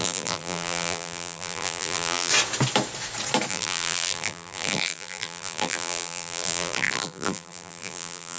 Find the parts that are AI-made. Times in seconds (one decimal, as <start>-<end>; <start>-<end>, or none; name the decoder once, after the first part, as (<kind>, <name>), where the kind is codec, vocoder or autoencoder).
0.0-2.3 (vocoder, BigVGAN v2); 3.5-8.4